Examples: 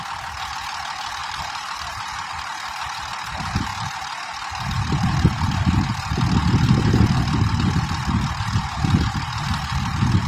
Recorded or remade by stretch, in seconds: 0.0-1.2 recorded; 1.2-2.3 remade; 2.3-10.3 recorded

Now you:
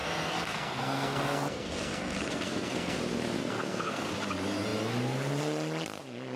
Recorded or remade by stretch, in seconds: 0.0-3.0 remade; 3.0-3.4 recorded; 3.4-4.1 remade; 4.1-6.4 recorded